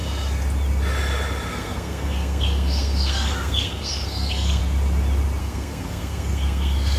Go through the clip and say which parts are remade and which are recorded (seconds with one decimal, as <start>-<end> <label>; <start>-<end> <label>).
0.0-1.5 recorded; 1.5-4.6 remade; 4.6-5.4 recorded; 5.4-7.0 remade